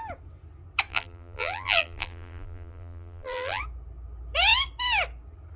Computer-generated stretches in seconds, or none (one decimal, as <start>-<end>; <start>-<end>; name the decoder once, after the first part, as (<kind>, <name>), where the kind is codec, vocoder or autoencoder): 0.9-3.6 (vocoder, BigVGAN v2)